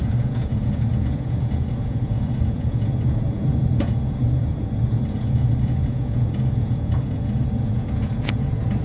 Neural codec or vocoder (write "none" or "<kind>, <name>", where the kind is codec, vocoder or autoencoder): vocoder, Vocos